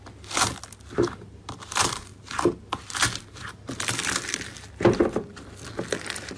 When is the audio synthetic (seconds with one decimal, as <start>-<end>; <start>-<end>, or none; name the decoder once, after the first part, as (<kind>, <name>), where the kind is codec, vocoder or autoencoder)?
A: none